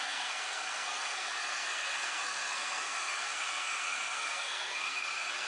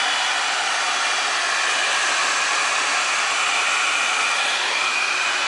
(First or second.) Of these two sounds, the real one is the second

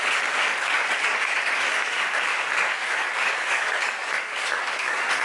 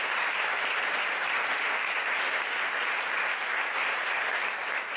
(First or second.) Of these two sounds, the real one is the second